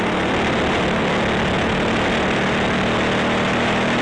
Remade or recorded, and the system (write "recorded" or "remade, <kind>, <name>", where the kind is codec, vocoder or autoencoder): recorded